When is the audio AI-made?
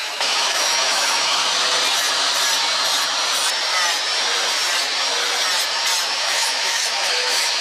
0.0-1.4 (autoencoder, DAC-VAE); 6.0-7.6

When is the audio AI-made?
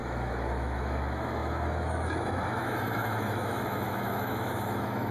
0.0-5.1 (autoencoder, DAC-VAE)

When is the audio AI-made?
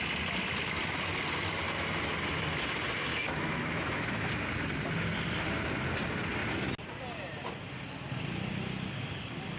3.1-4.3 (autoencoder, DAC-VAE)